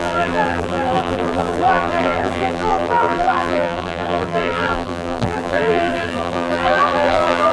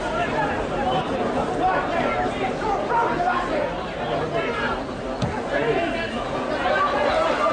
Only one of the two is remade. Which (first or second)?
first